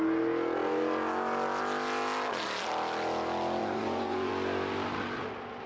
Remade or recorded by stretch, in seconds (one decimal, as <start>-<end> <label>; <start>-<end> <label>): 0.0-3.6 recorded; 3.6-4.3 remade; 4.3-5.7 recorded